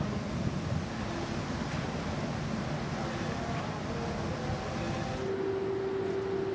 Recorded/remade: recorded